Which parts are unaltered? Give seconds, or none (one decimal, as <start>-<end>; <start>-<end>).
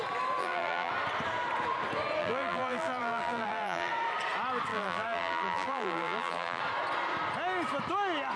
0.0-0.4; 0.9-2.2; 3.9-4.7; 6.6-8.4